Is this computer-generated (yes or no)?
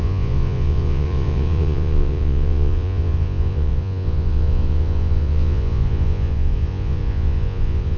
yes